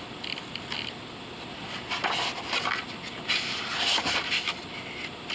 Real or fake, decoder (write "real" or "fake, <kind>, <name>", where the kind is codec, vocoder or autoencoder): real